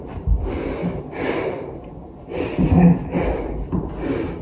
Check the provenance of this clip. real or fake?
real